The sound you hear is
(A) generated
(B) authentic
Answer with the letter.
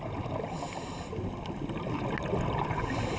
B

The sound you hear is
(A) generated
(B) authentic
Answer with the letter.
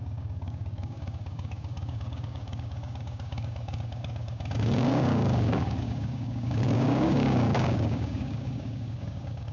A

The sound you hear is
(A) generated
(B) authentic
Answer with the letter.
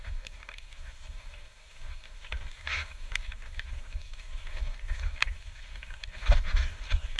A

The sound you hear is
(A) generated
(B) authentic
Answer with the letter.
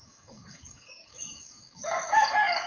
A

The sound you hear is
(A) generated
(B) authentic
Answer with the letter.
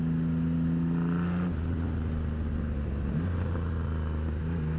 B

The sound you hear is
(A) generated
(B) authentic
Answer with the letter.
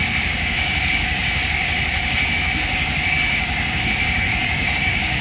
A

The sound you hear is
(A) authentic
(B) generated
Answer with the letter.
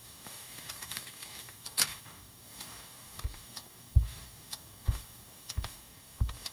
B